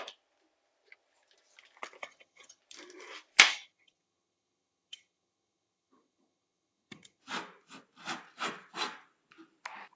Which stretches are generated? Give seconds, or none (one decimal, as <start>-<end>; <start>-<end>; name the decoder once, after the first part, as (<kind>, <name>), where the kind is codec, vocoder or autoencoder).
2.0-2.6 (vocoder, HiFi-GAN); 3.5-7.2